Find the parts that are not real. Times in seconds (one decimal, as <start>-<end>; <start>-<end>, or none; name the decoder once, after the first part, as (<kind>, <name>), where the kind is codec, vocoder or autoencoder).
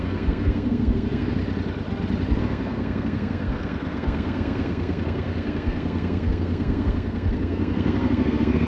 0.0-1.4 (codec, SNAC); 2.4-8.7